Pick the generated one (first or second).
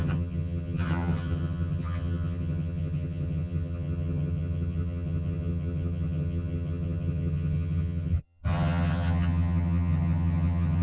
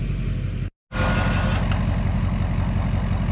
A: first